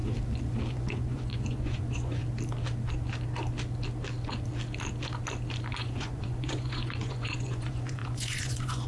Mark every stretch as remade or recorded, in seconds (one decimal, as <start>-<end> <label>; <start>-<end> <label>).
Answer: 0.0-0.7 recorded; 0.7-2.2 remade; 2.2-5.8 recorded; 5.8-8.9 remade